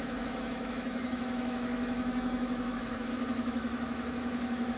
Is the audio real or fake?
fake